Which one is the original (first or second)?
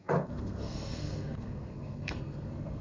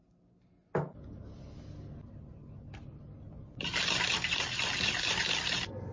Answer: second